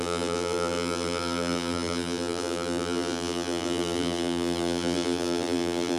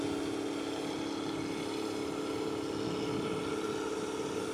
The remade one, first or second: first